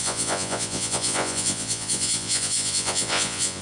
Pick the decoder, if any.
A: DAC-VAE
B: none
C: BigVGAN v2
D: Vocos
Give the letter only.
D